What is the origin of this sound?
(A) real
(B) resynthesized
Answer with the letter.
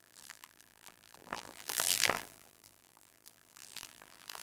B